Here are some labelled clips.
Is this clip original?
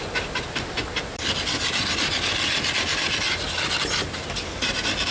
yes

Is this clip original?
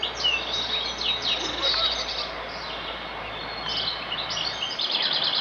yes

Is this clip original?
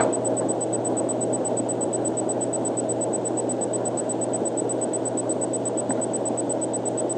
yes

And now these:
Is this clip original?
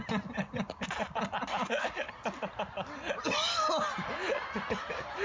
yes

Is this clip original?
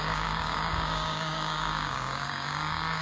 no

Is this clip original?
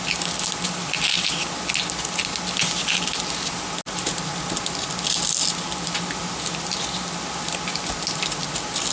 yes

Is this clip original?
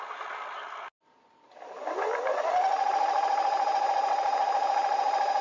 yes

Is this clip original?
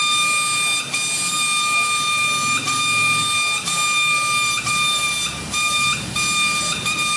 yes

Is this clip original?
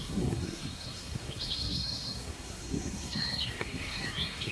no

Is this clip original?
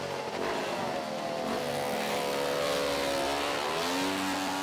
yes